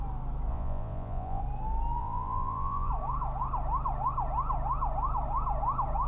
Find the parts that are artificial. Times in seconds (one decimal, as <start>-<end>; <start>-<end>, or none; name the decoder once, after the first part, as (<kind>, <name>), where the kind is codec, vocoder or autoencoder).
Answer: 0.5-1.4 (vocoder, Vocos); 2.0-2.9